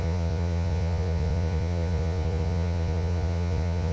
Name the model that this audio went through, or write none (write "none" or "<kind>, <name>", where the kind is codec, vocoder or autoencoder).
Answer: vocoder, Vocos